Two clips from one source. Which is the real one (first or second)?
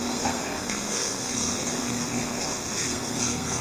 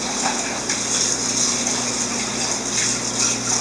second